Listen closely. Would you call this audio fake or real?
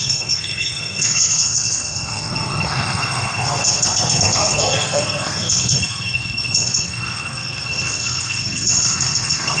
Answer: fake